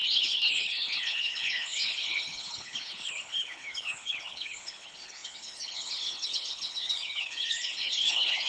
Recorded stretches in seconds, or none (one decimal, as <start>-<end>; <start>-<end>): none